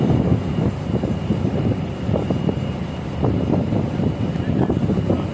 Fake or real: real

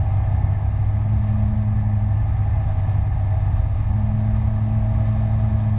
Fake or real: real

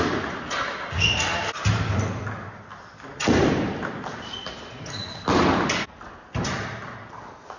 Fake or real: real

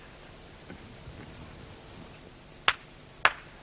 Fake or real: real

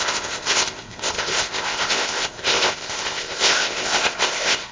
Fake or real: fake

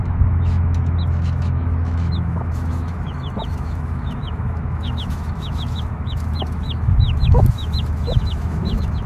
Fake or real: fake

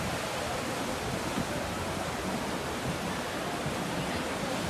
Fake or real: real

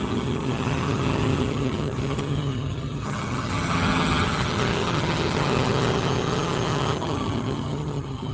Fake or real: fake